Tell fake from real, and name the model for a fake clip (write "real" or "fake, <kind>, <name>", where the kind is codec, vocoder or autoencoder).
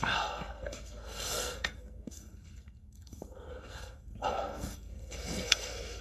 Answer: fake, codec, SNAC